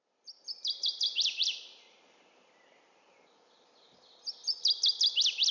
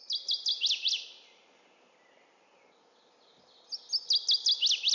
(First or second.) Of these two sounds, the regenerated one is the first